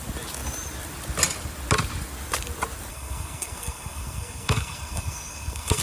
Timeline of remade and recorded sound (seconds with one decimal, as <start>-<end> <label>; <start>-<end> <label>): 0.0-2.9 recorded; 2.9-5.8 remade